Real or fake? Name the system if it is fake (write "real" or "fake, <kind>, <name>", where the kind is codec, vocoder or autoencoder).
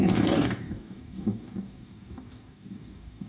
fake, codec, DAC